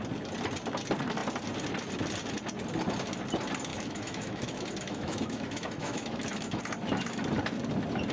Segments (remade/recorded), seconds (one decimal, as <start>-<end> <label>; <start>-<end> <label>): 0.0-3.7 recorded; 3.7-6.6 remade; 6.6-8.1 recorded